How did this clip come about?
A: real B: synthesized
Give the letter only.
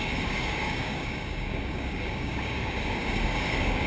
B